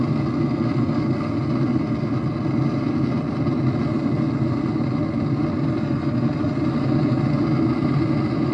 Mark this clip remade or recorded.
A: recorded